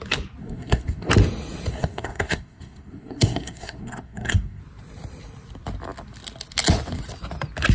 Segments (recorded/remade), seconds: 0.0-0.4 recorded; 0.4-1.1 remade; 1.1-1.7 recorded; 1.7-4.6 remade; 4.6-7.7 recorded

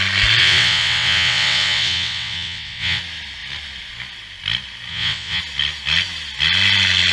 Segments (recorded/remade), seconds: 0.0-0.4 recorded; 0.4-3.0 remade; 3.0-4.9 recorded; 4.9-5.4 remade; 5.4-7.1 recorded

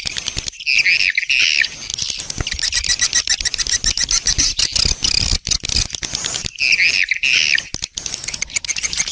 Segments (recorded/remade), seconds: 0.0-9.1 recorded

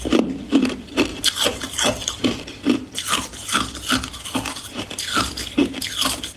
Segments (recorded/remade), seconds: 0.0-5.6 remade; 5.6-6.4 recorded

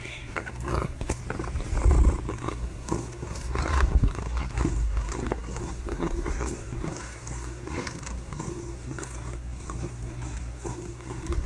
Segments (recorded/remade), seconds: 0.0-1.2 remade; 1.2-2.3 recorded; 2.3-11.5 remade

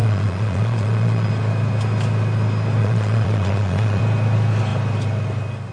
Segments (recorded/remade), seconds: 0.0-1.3 remade; 1.3-2.8 recorded; 2.8-4.0 remade; 4.0-5.7 recorded

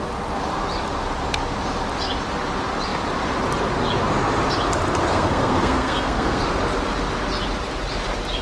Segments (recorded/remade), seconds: 0.0-5.1 recorded; 5.1-6.4 remade; 6.4-8.4 recorded